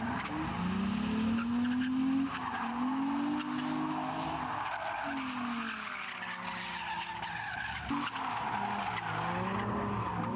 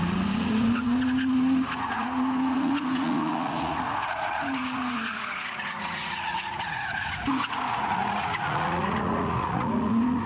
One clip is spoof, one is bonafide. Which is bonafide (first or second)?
first